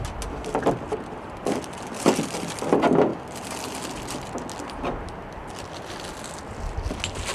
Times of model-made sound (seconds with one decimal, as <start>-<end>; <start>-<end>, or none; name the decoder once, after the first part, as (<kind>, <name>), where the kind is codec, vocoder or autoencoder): none